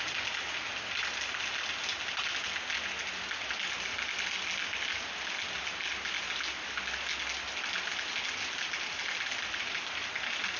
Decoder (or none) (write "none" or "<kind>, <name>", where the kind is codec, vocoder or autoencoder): none